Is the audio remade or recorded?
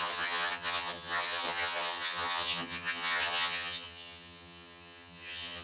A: remade